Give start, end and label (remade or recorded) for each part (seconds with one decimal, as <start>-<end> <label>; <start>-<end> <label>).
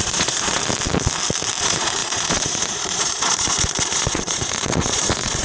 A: 0.0-0.6 remade; 0.6-1.6 recorded; 1.6-5.4 remade